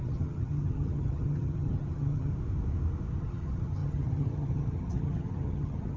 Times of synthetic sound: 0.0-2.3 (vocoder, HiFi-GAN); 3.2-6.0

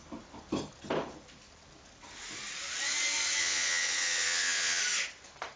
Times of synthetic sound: 3.4-4.8 (vocoder, WaveNeXt)

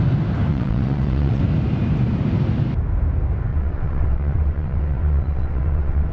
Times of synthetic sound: 0.5-1.4 (vocoder, WaveNeXt); 3.5-6.1